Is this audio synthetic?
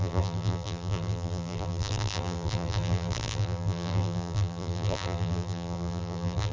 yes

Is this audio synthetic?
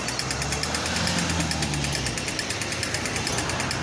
no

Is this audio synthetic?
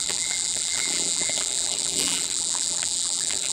yes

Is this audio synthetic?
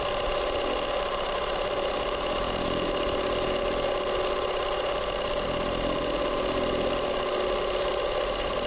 no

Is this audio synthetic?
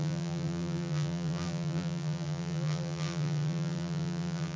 yes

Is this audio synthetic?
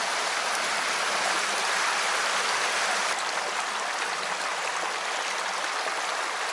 no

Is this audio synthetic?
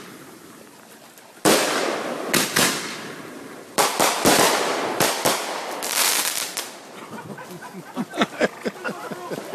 yes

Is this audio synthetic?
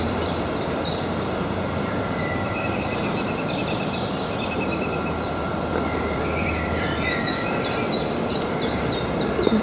yes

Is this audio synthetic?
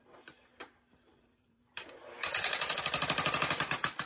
yes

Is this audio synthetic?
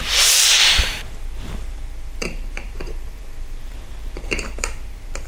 yes